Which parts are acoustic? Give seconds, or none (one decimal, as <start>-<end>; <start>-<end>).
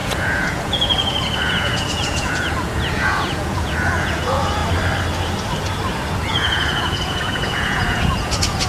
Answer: 4.6-6.3